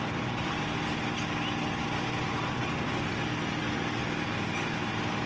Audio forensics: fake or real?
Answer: real